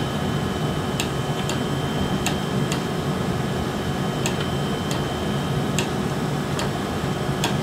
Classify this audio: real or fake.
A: fake